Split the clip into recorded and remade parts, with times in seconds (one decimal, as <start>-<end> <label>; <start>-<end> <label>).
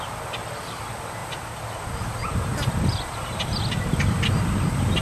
0.0-5.0 recorded